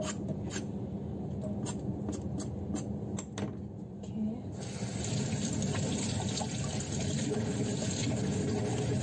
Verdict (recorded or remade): recorded